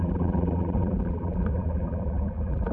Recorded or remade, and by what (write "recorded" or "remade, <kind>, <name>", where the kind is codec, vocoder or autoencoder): remade, vocoder, BigVGAN v2